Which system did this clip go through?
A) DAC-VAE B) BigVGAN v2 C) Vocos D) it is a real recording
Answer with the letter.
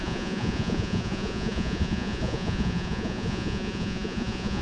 C